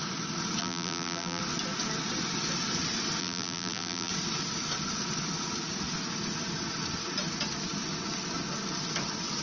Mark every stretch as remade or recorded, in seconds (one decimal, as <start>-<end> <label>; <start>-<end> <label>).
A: 0.0-0.6 recorded; 0.6-1.4 remade; 1.4-3.2 recorded; 3.2-4.1 remade; 4.1-9.4 recorded